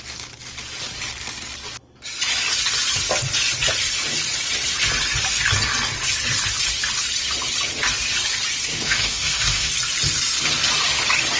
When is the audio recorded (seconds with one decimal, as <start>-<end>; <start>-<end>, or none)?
0.0-8.7; 9.7-11.4